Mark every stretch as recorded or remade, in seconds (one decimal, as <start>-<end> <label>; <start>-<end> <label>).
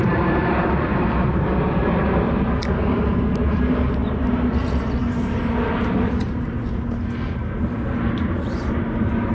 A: 0.0-6.6 remade; 6.6-7.6 recorded; 7.6-9.3 remade